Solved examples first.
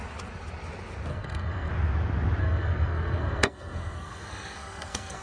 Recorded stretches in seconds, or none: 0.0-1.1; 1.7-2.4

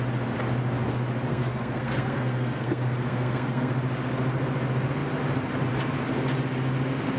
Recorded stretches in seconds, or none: 0.0-1.3; 3.7-7.2